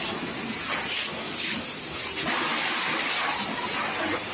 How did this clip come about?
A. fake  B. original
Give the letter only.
B